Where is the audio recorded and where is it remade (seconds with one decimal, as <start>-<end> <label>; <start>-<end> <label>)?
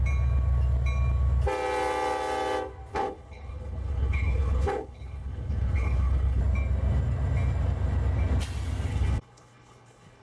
0.0-2.9 recorded; 2.9-6.4 remade; 6.4-8.9 recorded; 8.9-10.2 remade